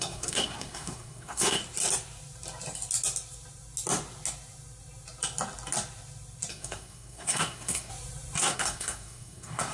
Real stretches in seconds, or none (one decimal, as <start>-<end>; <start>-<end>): 1.6-6.5; 7.9-8.4